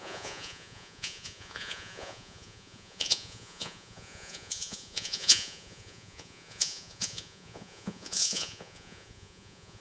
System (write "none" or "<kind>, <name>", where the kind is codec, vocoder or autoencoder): vocoder, Vocos